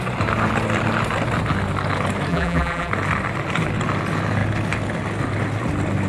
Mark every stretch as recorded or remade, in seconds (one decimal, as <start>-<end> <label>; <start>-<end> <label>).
0.0-2.3 recorded; 2.3-2.9 remade; 2.9-6.1 recorded